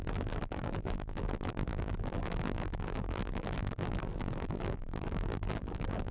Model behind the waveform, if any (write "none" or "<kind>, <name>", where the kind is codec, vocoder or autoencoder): vocoder, BigVGAN v2